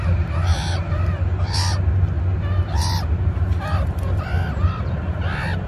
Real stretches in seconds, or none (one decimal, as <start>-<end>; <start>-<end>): 0.0-2.3; 5.0-5.7